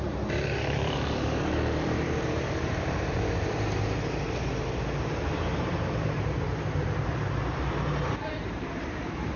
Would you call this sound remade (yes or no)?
yes